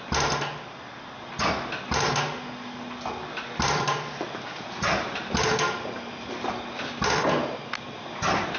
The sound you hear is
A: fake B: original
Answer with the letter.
B